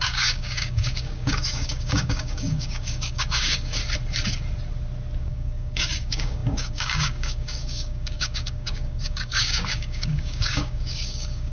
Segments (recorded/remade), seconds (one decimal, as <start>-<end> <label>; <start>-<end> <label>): 0.0-3.8 remade; 3.8-5.2 recorded; 5.2-11.5 remade